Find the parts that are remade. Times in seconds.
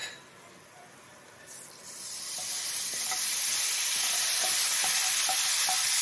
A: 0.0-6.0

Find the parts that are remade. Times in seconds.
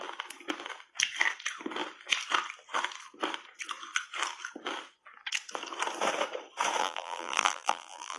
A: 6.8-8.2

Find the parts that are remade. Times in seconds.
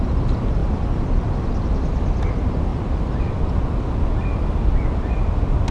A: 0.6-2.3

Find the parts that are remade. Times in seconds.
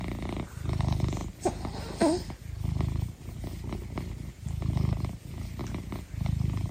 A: none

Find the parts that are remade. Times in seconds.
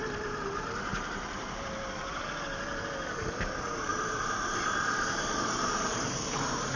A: 0.0-2.2; 3.9-6.8